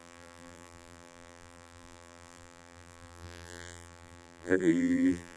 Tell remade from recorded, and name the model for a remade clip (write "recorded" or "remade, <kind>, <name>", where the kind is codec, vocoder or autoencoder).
remade, vocoder, BigVGAN v2